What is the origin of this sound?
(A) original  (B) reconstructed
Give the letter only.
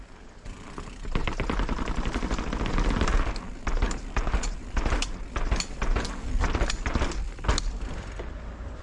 A